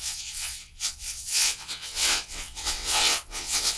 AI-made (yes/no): yes